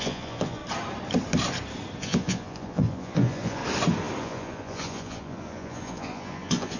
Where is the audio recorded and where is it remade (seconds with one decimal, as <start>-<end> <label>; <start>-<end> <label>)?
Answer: 0.0-0.6 remade; 0.6-2.0 recorded; 2.0-3.6 remade; 3.6-4.2 recorded; 4.2-6.8 remade